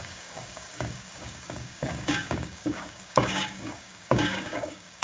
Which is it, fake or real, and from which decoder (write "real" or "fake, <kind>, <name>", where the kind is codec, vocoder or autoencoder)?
fake, codec, DAC